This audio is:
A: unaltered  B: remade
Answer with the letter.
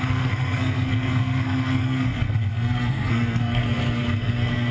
B